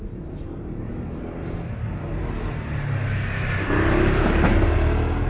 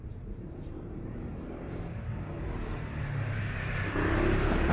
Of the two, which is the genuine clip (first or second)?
first